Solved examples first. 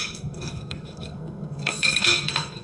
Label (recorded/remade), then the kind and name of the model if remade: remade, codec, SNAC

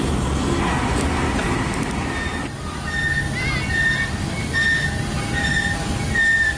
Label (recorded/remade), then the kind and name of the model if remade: recorded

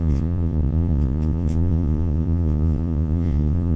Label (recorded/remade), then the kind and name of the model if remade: remade, vocoder, Vocos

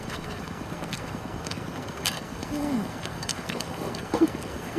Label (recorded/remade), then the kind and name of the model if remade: remade, codec, SNAC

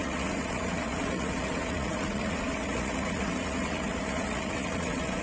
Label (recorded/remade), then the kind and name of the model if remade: remade, vocoder, Vocos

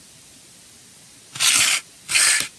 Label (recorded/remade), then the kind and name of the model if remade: recorded